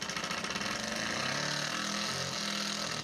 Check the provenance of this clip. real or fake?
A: real